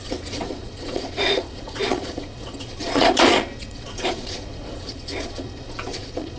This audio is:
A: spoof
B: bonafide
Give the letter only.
A